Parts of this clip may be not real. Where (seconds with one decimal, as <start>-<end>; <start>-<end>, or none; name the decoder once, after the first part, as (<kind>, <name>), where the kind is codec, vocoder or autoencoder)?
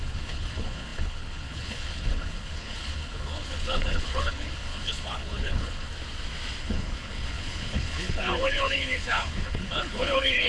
0.0-5.9 (codec, HILCodec); 6.6-10.5